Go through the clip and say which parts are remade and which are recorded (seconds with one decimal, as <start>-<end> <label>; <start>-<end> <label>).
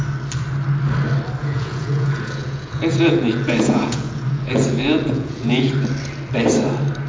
0.0-1.4 recorded; 1.4-5.7 remade; 5.7-7.1 recorded